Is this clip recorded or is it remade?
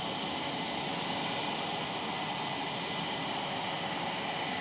recorded